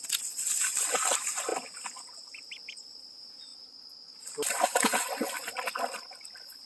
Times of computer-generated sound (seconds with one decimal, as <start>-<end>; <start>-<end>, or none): none